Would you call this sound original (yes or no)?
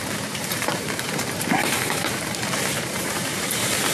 no